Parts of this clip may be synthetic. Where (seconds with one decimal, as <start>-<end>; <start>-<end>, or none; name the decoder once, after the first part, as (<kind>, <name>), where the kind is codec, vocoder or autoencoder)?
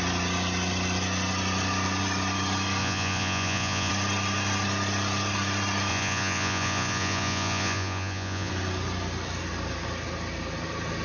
2.8-3.9 (vocoder, Vocos); 5.9-8.5